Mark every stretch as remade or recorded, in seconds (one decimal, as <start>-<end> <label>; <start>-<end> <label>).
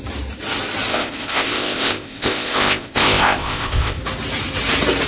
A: 0.0-0.9 recorded; 0.9-4.0 remade; 4.0-5.1 recorded